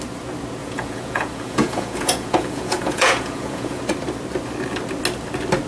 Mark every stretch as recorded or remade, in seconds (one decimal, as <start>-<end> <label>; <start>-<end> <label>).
0.0-0.6 recorded; 0.6-3.8 remade; 3.8-5.7 recorded